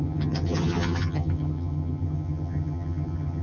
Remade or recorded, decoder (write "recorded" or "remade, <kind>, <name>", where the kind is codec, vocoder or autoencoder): remade, vocoder, HiFi-GAN